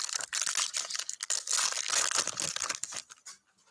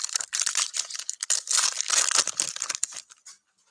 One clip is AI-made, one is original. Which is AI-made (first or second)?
second